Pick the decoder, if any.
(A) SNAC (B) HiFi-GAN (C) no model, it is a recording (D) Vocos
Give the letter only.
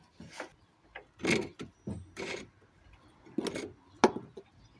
C